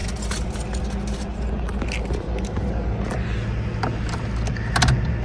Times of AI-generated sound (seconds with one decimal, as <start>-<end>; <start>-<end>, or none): none